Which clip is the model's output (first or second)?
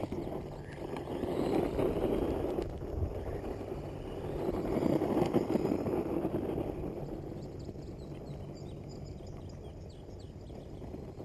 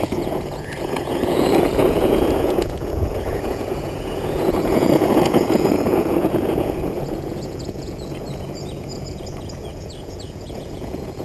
second